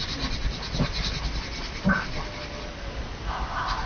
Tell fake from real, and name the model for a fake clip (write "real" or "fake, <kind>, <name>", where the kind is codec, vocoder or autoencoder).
real